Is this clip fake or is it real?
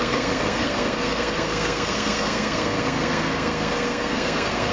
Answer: fake